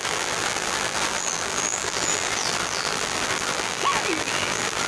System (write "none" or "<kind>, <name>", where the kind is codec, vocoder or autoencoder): vocoder, BigVGAN v2